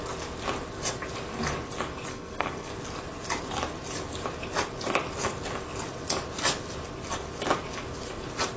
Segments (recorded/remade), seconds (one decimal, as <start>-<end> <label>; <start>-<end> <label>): 0.0-2.1 recorded; 2.1-2.7 remade; 2.7-8.6 recorded